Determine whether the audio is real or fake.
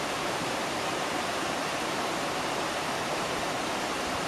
fake